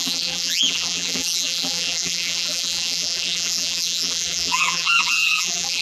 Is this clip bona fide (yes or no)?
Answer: no